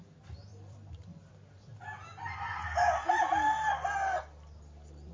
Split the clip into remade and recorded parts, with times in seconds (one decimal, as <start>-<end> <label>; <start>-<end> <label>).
0.0-0.5 recorded; 0.5-1.3 remade; 1.3-5.1 recorded